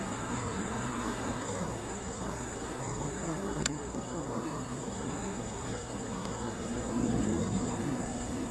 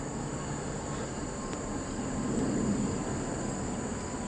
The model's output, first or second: first